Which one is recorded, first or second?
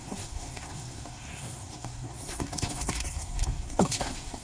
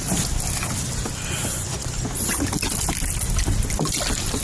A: second